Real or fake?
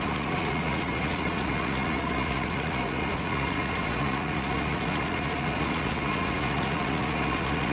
fake